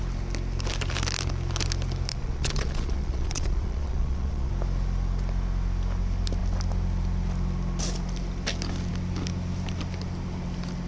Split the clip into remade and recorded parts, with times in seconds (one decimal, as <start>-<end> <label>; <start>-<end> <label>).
0.0-2.1 recorded; 2.1-4.5 remade; 4.5-10.9 recorded

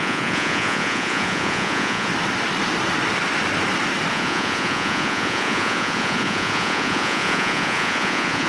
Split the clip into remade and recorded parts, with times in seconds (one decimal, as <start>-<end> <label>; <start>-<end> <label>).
0.0-2.1 remade; 2.1-4.1 recorded; 4.1-8.5 remade

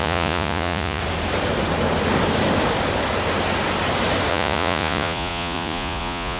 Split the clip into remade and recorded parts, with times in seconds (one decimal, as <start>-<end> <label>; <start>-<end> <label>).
0.0-1.0 remade; 1.0-4.3 recorded; 4.3-6.4 remade

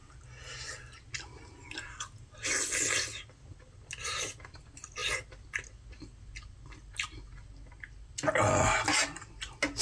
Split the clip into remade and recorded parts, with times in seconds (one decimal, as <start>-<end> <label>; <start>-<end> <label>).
0.0-9.8 recorded

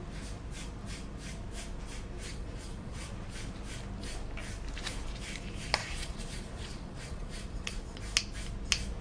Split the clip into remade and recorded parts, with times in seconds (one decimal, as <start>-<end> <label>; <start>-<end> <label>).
0.0-2.3 recorded; 2.3-3.1 remade; 3.1-5.8 recorded; 5.8-8.0 remade; 8.0-9.0 recorded

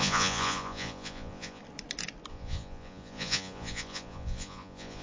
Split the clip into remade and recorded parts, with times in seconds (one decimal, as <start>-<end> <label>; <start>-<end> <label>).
0.0-1.6 remade; 1.6-2.3 recorded; 2.3-5.0 remade